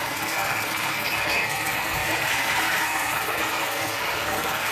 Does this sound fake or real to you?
fake